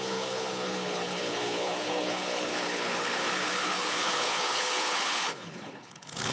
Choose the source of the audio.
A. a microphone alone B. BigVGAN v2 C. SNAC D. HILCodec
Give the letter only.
D